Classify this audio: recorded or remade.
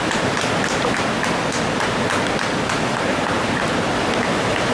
recorded